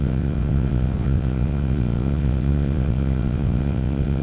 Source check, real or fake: fake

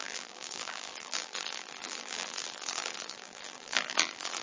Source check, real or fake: fake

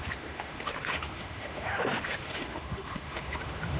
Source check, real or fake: fake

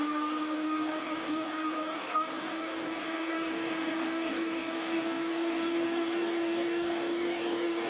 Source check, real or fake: fake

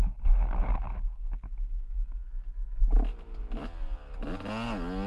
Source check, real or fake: real